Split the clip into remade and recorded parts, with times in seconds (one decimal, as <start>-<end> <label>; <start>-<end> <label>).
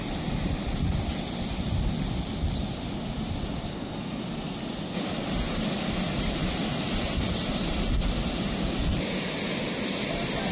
0.0-3.7 recorded; 3.7-4.2 remade; 4.2-10.5 recorded